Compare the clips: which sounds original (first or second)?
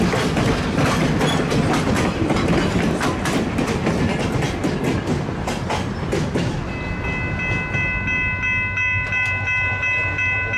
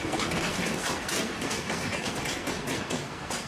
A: first